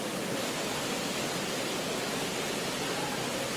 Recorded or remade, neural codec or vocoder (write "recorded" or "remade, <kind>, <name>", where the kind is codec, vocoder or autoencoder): recorded